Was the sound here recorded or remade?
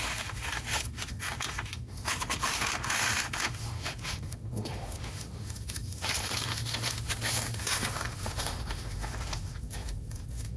remade